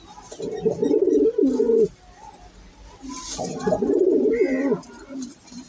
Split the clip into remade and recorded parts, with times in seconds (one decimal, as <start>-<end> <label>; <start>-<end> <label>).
0.0-5.7 recorded